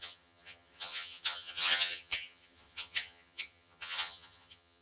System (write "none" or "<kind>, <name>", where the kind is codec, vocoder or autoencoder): vocoder, HiFi-GAN